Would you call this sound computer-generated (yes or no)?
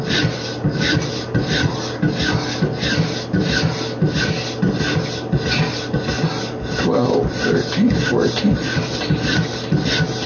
no